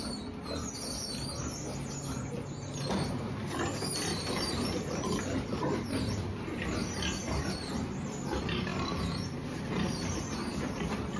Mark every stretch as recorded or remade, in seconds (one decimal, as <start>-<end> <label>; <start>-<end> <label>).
0.0-11.2 recorded